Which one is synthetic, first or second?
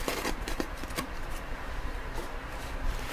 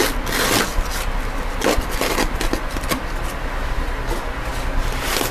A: first